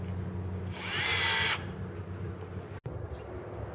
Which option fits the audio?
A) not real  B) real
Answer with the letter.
B